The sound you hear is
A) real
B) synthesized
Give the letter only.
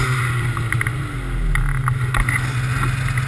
A